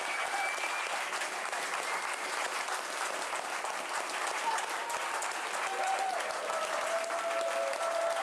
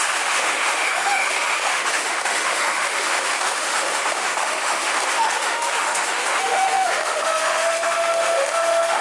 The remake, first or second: second